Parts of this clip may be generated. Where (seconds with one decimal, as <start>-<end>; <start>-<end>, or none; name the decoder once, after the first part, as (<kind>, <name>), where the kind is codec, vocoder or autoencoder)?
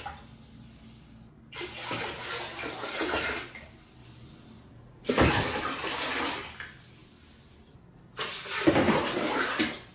none